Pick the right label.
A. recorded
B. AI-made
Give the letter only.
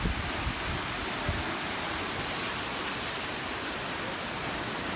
A